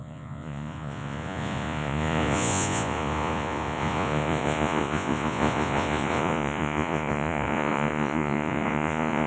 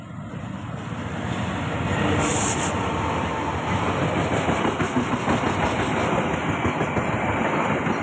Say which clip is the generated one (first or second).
first